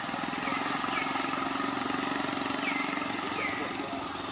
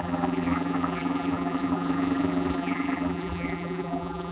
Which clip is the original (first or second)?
first